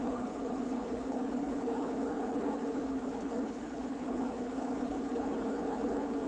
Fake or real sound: fake